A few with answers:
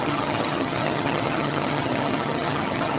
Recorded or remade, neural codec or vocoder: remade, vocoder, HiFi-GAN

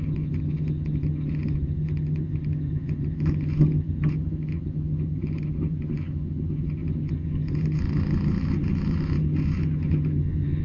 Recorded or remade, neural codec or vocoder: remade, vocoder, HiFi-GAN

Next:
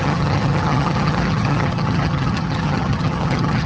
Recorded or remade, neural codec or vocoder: remade, vocoder, HiFi-GAN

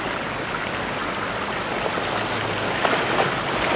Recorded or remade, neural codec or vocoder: recorded